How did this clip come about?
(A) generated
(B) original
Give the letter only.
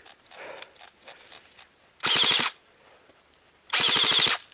B